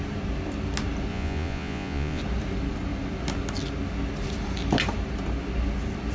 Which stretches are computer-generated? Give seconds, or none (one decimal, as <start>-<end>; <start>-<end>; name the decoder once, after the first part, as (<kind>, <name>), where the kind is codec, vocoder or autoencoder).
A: 1.1-2.2 (vocoder, Vocos)